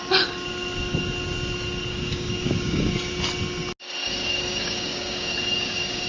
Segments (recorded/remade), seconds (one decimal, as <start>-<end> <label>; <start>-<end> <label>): 0.0-1.9 recorded; 1.9-2.9 remade; 2.9-4.0 recorded; 4.0-6.1 remade